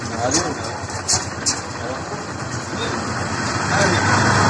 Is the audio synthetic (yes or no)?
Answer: no